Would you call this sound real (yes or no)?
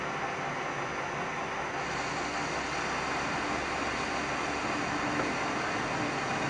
yes